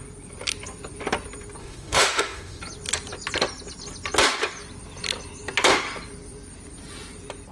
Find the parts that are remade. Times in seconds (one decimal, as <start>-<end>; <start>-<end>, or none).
1.6-2.6